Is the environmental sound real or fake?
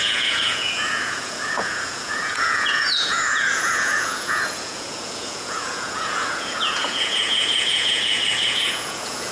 fake